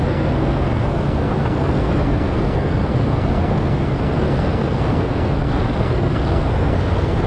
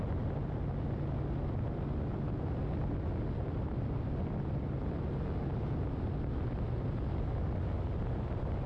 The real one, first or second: second